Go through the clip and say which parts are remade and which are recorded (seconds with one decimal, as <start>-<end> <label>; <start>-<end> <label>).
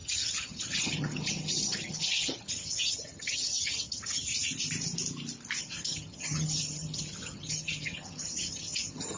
0.0-4.3 remade; 4.3-5.6 recorded; 5.6-9.2 remade